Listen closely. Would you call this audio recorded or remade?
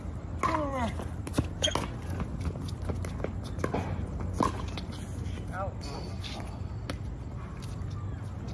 recorded